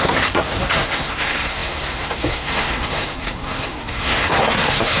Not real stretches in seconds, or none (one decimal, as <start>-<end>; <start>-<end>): 0.0-5.0